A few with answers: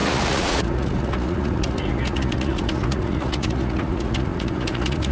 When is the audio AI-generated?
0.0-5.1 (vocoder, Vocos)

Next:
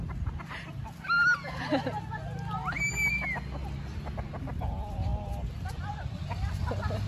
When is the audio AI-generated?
none

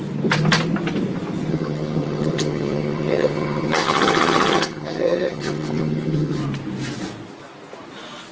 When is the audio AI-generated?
1.5-6.4 (vocoder, HiFi-GAN)

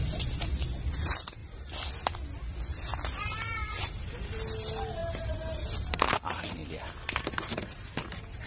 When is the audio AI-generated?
0.9-1.4 (vocoder, BigVGAN v2); 3.8-6.6; 7.1-8.5

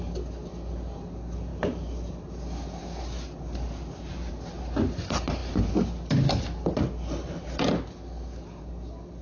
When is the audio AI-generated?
none

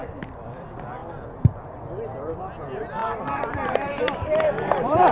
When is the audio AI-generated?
0.0-1.0 (vocoder, BigVGAN v2); 2.3-5.1